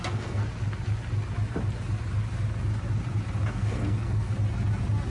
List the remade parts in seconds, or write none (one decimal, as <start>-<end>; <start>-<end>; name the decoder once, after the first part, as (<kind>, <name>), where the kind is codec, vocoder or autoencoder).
0.0-0.4 (codec, SNAC); 3.5-4.3